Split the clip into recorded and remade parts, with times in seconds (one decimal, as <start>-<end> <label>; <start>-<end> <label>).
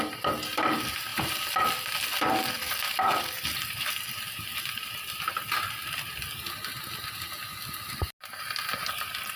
0.0-9.4 recorded